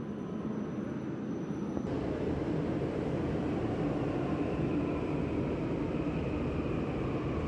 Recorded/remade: recorded